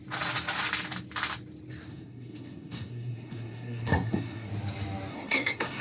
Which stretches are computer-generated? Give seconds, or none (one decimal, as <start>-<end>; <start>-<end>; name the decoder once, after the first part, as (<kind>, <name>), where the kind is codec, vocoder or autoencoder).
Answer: 1.9-4.5 (codec, SNAC); 5.1-5.8